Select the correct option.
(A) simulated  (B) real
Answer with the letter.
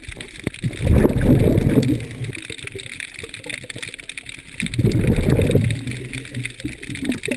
B